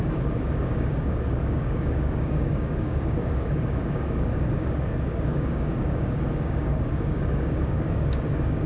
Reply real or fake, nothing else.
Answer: fake